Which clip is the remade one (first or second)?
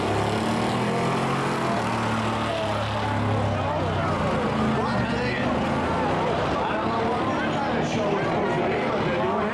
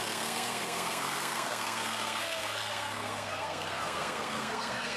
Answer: second